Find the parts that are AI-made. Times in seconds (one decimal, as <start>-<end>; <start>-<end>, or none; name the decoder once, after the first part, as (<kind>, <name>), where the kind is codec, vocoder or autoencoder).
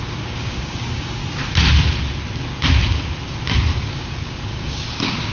0.0-1.2 (codec, DAC); 3.9-5.3